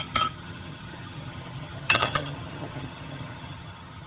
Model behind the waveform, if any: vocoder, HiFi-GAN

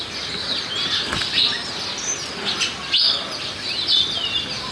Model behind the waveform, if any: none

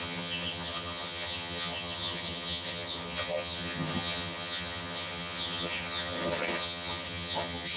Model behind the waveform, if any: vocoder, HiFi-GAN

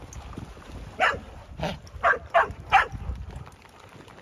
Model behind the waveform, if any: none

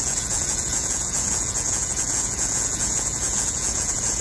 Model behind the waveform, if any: vocoder, Vocos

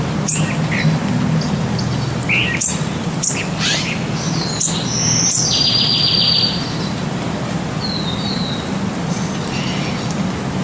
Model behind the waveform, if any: none